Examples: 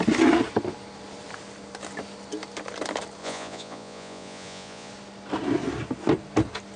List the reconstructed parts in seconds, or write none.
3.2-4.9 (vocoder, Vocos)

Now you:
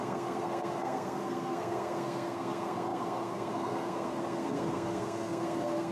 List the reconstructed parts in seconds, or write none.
0.0-5.9 (codec, SNAC)

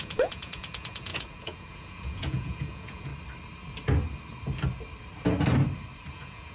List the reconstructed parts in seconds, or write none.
0.0-3.1 (vocoder, Vocos); 6.1-6.5

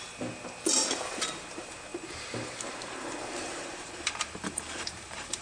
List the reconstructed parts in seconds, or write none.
0.0-5.4 (vocoder, BigVGAN v2)

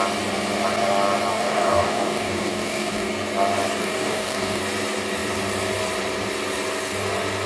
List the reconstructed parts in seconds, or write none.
1.3-3.1 (codec, DAC); 3.8-4.6